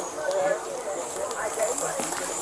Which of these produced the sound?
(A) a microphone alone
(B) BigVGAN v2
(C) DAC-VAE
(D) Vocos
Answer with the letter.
A